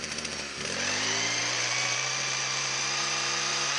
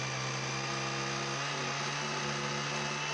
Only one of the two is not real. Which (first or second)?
first